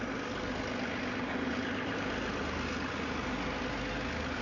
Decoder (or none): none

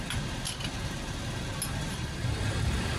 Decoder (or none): none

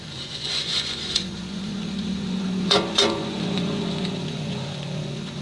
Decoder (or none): vocoder, Vocos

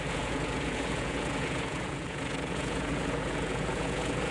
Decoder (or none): vocoder, Vocos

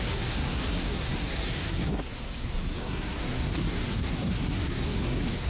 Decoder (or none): codec, SNAC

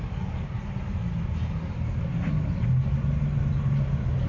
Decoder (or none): none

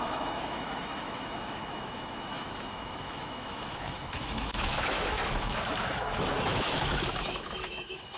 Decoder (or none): autoencoder, DAC-VAE